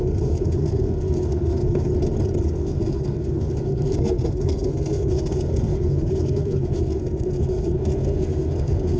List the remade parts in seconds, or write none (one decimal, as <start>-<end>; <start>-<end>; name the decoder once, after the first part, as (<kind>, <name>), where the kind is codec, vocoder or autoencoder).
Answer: 0.0-1.9 (codec, SNAC); 2.4-9.0